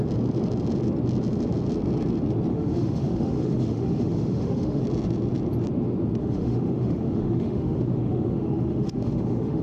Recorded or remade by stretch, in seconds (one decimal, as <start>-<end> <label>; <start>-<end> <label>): 0.0-2.5 recorded; 2.5-4.8 remade; 4.8-6.2 recorded; 6.2-9.6 remade